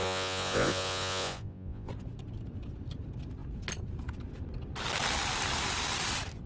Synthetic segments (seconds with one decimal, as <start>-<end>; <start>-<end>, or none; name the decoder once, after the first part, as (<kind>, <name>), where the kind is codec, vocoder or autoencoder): 0.0-1.9 (vocoder, Vocos)